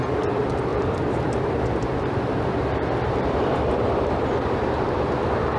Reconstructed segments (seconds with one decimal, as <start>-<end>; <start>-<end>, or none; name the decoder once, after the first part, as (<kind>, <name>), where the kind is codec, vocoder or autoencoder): 0.7-4.1 (vocoder, BigVGAN v2)